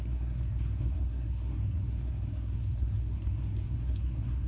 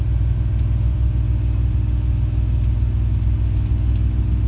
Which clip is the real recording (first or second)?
second